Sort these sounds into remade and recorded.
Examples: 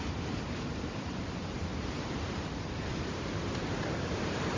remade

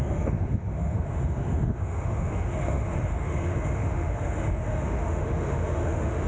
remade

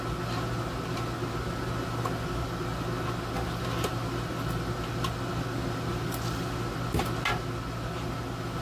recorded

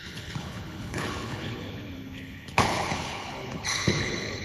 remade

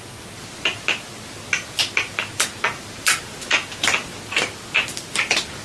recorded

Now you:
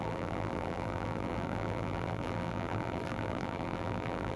remade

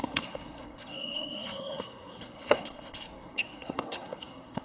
remade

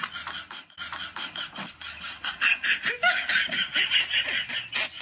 recorded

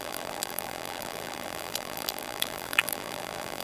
remade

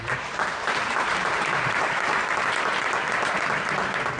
remade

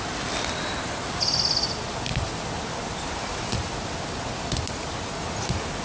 recorded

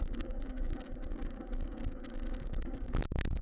remade